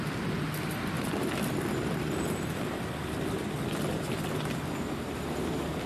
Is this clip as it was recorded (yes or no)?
no